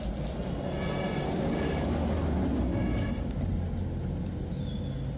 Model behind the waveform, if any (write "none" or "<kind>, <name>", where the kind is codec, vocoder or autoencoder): none